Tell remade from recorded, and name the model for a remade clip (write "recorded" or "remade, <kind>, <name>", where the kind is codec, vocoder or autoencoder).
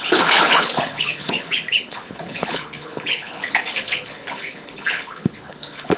remade, codec, HILCodec